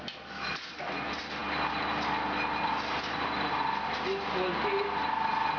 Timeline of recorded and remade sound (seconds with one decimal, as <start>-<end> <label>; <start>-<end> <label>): 0.0-5.6 recorded